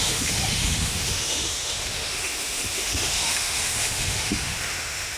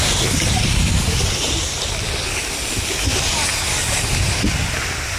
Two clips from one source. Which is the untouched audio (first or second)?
second